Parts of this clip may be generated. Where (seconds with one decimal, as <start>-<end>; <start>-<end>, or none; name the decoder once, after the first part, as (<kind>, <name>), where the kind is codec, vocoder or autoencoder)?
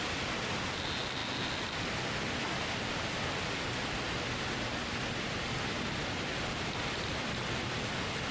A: none